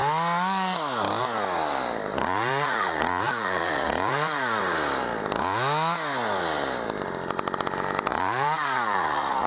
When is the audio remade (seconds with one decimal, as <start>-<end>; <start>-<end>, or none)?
2.1-4.6; 8.1-9.5